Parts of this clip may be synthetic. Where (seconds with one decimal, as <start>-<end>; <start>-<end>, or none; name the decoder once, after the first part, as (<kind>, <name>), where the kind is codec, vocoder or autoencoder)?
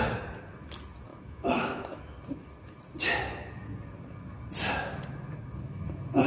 1.1-2.0 (autoencoder, DAC-VAE)